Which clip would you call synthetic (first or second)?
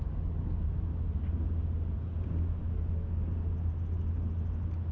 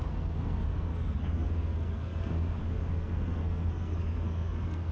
second